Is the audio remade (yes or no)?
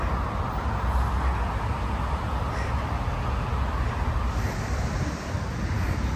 no